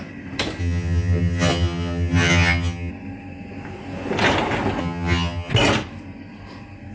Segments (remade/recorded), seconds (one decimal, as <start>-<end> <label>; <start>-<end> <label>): 0.0-0.6 recorded; 0.6-2.9 remade; 2.9-4.8 recorded; 4.8-5.5 remade; 5.5-6.9 recorded